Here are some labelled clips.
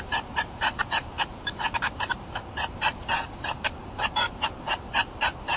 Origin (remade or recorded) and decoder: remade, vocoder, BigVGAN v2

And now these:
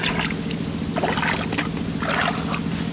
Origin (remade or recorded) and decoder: recorded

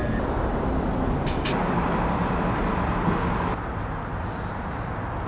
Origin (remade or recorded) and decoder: recorded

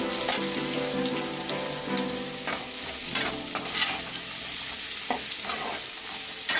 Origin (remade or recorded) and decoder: recorded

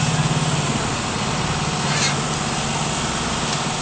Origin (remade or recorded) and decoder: recorded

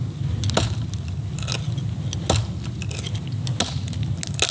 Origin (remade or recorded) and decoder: recorded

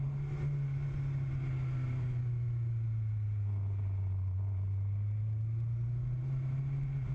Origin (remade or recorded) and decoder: recorded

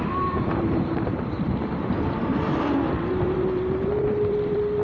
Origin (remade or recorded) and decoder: remade, vocoder, BigVGAN v2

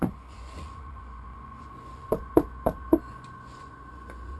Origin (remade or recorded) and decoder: remade, vocoder, Vocos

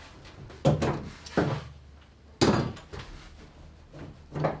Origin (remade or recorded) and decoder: recorded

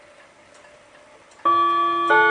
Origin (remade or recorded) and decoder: recorded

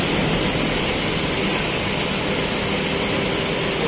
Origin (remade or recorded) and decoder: recorded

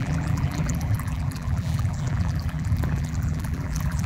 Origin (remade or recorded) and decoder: remade, vocoder, BigVGAN v2